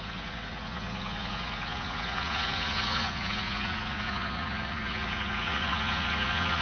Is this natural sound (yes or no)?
no